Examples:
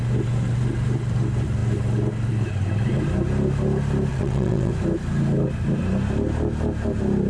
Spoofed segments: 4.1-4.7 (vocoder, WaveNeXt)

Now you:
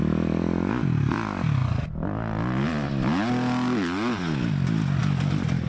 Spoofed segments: none

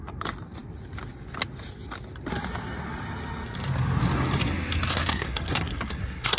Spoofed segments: 4.9-6.4 (codec, SNAC)

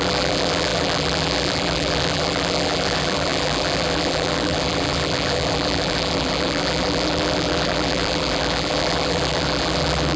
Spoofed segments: 0.0-10.2 (vocoder, BigVGAN v2)

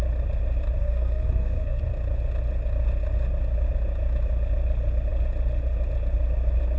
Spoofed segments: 0.8-1.8 (codec, SNAC)